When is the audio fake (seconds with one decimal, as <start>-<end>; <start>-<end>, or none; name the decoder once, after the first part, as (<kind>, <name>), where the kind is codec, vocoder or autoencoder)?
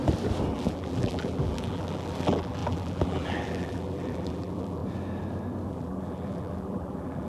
0.5-4.8 (vocoder, BigVGAN v2); 5.7-7.3